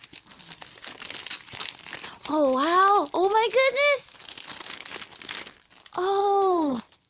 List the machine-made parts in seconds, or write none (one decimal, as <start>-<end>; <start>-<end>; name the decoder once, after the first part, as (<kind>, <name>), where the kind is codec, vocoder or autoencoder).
6.2-7.1 (codec, SNAC)